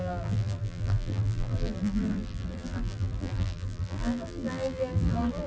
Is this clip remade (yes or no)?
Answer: yes